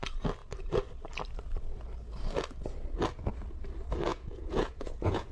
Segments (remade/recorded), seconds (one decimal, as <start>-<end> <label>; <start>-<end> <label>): 0.0-4.1 recorded; 4.1-5.3 remade